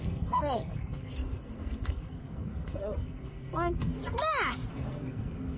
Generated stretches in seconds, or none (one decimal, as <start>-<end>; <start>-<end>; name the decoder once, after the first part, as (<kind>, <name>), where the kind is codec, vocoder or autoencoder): 0.0-4.0 (codec, SNAC); 4.7-5.6